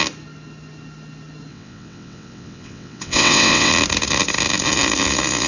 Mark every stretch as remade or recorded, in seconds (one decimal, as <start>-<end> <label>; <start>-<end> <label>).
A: 0.0-1.5 recorded; 1.5-3.7 remade; 3.7-5.5 recorded